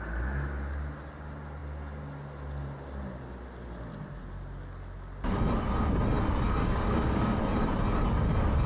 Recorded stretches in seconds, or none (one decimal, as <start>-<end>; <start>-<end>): 0.0-6.6; 7.4-8.7